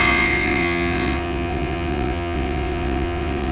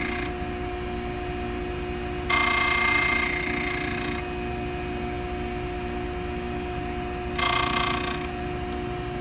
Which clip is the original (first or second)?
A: second